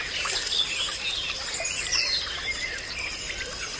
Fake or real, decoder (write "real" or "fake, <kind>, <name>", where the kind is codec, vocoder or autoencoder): real